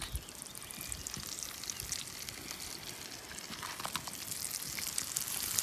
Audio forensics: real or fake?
real